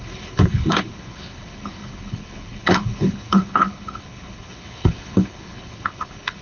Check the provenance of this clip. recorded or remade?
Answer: remade